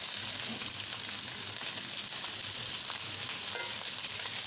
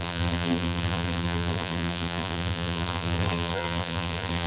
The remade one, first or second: second